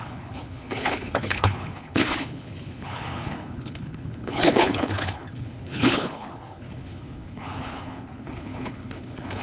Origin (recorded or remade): remade